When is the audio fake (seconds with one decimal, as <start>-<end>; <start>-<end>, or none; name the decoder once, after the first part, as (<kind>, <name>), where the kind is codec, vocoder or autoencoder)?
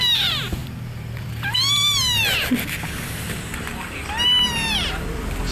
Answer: 0.0-5.5 (vocoder, BigVGAN v2)